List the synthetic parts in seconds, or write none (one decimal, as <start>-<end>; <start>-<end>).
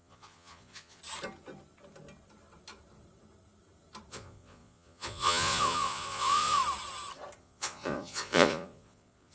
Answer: 0.0-1.0; 4.1-6.6; 7.4-9.3